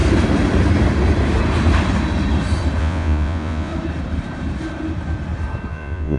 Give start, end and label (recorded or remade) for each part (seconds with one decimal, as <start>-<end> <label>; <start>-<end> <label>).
0.0-2.8 recorded; 2.8-3.7 remade; 3.7-5.7 recorded; 5.7-6.2 remade